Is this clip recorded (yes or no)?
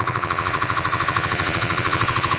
no